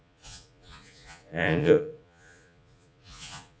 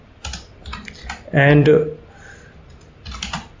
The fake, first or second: first